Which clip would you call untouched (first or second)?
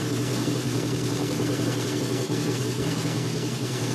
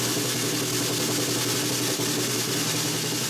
second